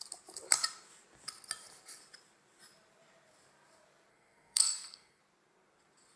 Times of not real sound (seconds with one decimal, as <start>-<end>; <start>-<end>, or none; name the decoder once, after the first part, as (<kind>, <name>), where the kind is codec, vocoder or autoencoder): 4.1-5.2 (codec, SNAC)